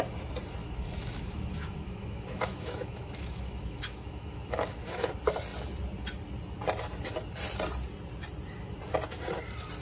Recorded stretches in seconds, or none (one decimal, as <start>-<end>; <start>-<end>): 0.0-0.6; 5.1-9.8